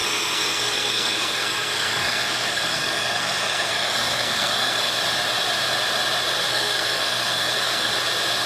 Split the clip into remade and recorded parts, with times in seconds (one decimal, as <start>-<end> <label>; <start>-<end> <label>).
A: 0.0-5.0 remade; 5.0-6.5 recorded; 6.5-7.9 remade; 7.9-8.5 recorded